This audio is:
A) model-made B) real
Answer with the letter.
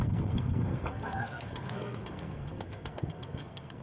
A